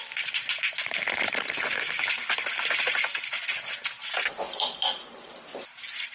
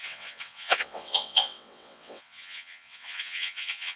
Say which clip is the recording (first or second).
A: first